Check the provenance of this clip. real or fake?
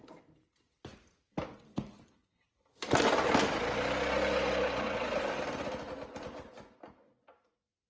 real